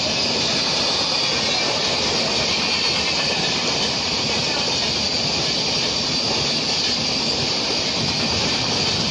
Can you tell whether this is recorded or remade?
recorded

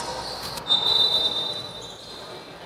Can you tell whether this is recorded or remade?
recorded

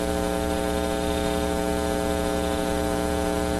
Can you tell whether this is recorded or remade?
recorded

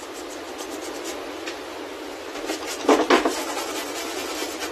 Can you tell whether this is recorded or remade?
recorded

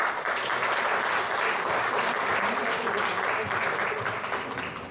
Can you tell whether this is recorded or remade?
recorded